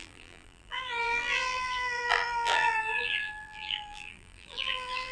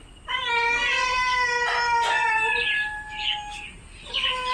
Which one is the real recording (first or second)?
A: second